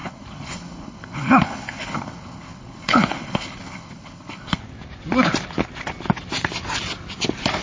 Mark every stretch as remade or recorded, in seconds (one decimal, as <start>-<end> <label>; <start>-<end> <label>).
0.0-4.6 remade; 4.6-7.6 recorded